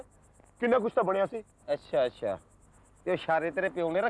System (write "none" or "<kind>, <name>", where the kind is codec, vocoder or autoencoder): none